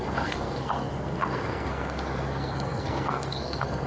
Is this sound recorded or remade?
remade